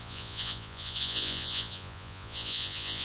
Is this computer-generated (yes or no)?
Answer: yes